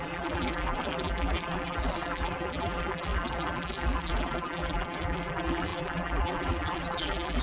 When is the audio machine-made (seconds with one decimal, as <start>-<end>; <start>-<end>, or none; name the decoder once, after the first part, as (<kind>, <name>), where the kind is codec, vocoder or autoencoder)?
0.0-7.4 (vocoder, BigVGAN v2)